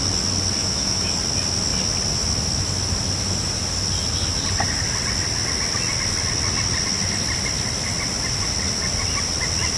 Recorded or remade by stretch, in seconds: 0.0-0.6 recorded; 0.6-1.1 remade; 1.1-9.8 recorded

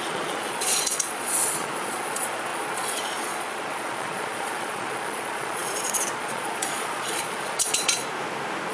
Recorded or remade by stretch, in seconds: 0.0-8.0 remade; 8.0-8.7 recorded

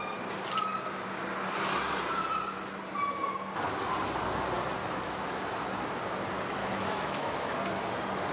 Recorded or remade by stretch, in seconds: 0.0-4.8 recorded; 4.8-5.4 remade; 5.4-6.6 recorded; 6.6-7.6 remade; 7.6-8.3 recorded